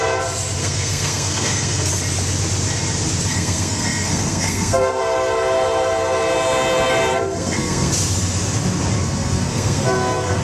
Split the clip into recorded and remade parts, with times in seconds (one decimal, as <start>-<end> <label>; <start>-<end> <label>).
0.0-0.6 recorded; 0.6-1.9 remade; 1.9-3.3 recorded; 3.3-5.0 remade; 5.0-7.1 recorded; 7.1-7.9 remade; 7.9-9.0 recorded; 9.0-10.4 remade